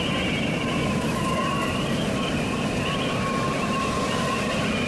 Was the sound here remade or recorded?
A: recorded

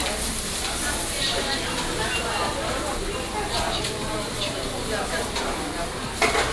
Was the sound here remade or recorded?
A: recorded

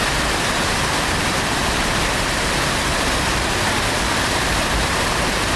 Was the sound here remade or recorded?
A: recorded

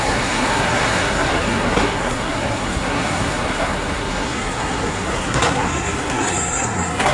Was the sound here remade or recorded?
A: remade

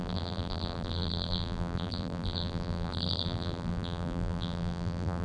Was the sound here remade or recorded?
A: remade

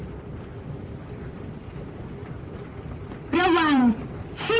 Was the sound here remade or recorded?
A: remade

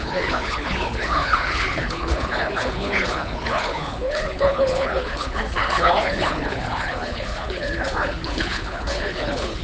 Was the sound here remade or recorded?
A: remade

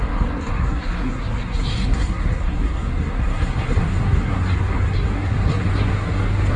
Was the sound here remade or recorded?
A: remade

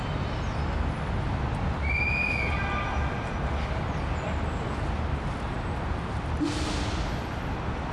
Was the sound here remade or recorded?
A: recorded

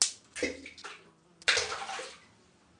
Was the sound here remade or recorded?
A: recorded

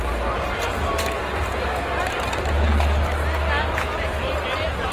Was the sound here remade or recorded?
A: recorded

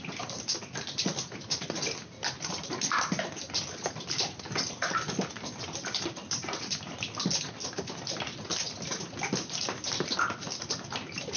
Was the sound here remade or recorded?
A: recorded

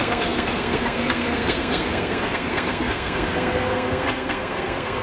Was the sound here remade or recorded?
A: remade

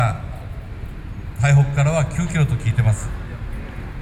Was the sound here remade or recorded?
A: recorded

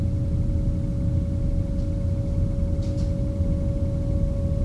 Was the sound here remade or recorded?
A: recorded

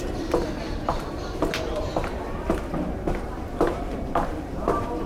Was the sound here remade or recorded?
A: remade